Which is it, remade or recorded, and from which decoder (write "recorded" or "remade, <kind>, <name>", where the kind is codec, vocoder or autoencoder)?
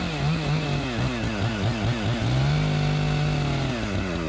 recorded